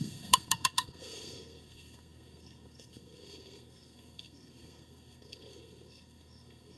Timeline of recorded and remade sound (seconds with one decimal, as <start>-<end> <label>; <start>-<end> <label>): 0.0-6.8 remade